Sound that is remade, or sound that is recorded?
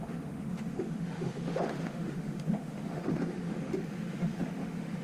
remade